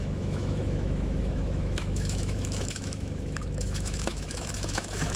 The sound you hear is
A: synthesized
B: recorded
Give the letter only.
A